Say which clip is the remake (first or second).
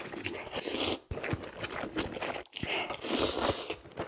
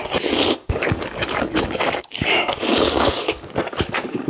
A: second